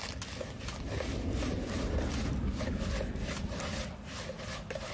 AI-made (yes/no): no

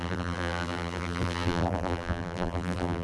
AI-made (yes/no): yes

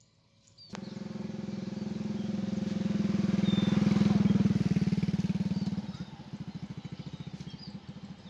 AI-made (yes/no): no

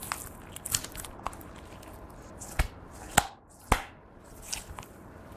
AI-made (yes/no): no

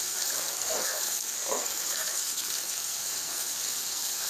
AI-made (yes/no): yes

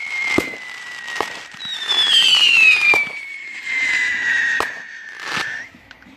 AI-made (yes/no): yes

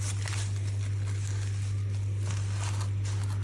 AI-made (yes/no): no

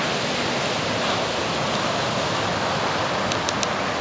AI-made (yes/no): no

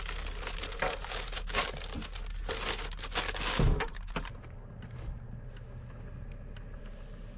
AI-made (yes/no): no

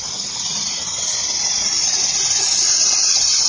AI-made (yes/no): no